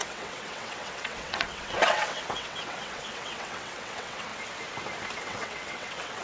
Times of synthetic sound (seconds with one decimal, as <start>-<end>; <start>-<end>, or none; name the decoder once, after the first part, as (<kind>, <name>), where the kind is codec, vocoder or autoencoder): 0.0-4.3 (vocoder, WaveNeXt); 5.2-6.2